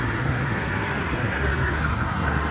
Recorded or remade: remade